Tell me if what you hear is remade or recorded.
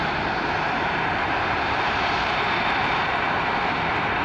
remade